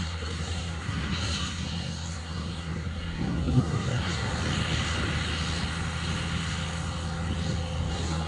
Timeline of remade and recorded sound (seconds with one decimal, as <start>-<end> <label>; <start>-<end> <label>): 0.0-4.3 remade; 4.3-7.9 recorded; 7.9-8.3 remade